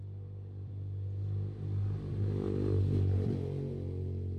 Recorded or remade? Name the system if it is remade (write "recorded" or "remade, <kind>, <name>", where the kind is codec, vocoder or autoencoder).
recorded